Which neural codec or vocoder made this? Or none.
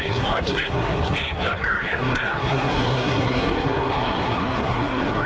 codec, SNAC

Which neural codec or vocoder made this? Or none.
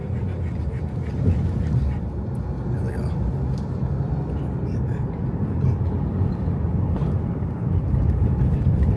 none